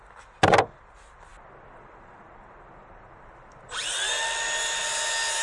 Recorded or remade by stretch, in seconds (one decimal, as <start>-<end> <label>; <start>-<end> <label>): 0.0-5.4 recorded